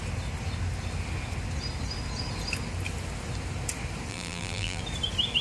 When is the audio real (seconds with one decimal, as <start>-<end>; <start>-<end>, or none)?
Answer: 0.0-4.1; 4.8-5.4